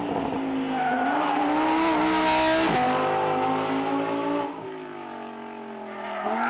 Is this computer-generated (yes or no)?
no